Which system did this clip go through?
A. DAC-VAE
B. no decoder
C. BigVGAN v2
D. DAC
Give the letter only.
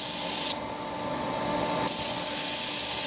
B